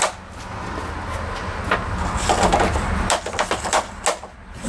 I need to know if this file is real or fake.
real